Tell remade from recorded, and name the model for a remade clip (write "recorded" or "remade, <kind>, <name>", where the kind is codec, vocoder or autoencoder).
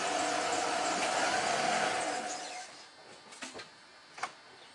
recorded